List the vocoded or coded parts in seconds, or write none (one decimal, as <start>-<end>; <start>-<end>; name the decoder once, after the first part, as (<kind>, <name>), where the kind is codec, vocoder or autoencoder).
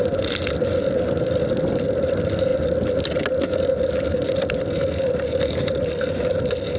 none